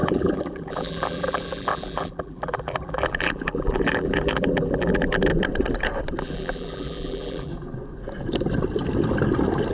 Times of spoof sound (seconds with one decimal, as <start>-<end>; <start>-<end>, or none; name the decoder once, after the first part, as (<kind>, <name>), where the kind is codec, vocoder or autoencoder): 0.0-5.3 (vocoder, BigVGAN v2); 6.2-7.5